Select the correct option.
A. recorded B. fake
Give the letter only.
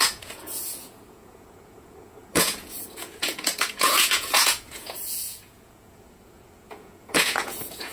B